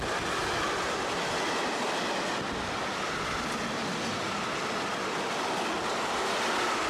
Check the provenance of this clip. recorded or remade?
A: recorded